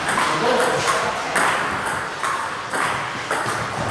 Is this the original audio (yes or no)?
yes